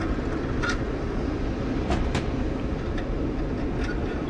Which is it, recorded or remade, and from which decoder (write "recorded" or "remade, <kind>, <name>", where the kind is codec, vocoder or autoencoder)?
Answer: recorded